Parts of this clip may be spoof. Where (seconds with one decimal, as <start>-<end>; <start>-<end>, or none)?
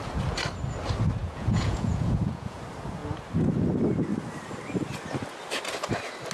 1.2-2.6